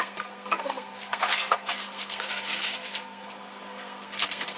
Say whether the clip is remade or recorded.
remade